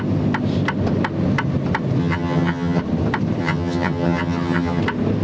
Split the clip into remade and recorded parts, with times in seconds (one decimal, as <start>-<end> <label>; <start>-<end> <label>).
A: 0.0-2.0 recorded; 2.0-2.8 remade; 2.8-3.4 recorded; 3.4-4.8 remade; 4.8-5.2 recorded